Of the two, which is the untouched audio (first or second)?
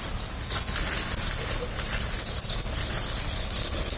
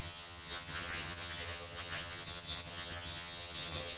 first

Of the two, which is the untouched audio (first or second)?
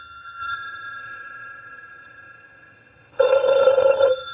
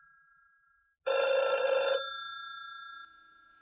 second